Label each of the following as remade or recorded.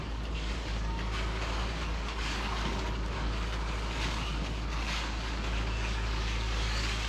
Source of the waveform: remade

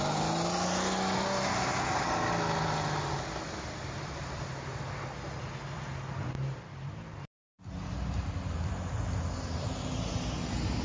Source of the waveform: recorded